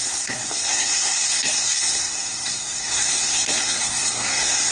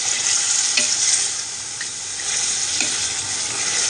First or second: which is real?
second